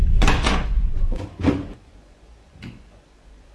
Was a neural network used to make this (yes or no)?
yes